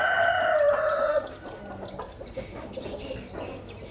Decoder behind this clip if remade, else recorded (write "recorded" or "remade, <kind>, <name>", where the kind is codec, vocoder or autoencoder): recorded